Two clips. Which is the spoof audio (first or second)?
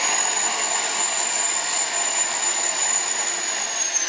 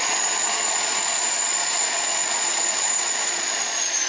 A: second